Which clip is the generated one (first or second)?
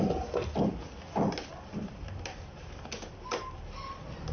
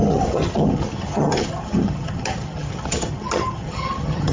second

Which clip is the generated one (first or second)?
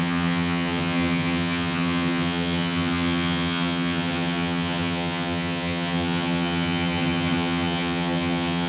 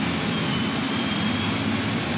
first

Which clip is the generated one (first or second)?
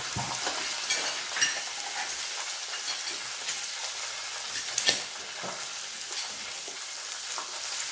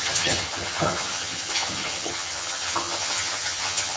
second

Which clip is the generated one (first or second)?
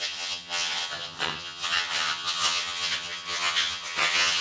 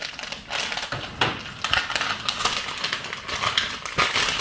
first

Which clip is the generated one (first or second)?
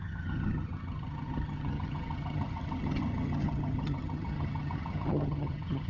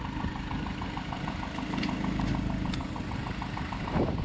first